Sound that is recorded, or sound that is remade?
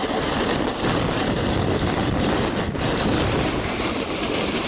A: recorded